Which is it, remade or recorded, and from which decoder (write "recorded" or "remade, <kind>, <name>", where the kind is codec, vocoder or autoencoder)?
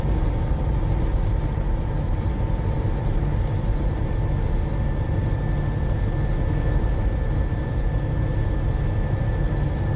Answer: recorded